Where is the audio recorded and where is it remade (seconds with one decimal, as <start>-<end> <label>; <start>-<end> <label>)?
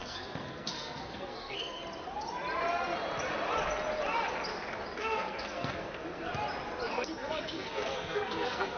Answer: 0.0-1.8 remade; 1.8-5.0 recorded; 5.0-6.3 remade; 6.3-6.9 recorded; 6.9-8.8 remade